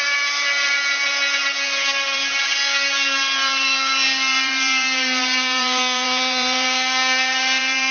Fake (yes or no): yes